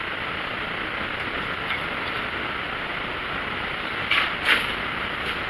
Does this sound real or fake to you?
real